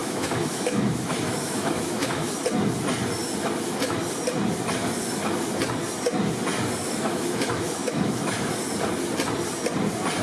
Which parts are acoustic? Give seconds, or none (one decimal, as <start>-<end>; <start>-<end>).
2.3-6.8; 8.6-10.2